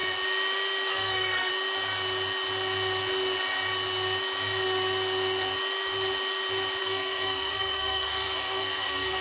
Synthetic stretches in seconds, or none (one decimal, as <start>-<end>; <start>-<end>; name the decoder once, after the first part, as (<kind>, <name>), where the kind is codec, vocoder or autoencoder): 0.9-1.5 (codec, SNAC); 6.8-9.2